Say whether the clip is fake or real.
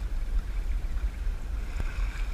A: real